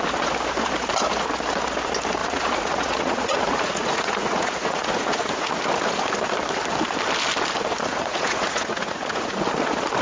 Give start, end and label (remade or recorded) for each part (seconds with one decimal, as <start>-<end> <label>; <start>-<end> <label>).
0.0-2.2 recorded; 2.2-5.6 remade; 5.6-7.9 recorded; 7.9-9.3 remade; 9.3-10.0 recorded